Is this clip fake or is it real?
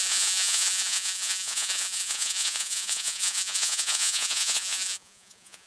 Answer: fake